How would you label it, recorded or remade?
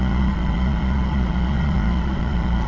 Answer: remade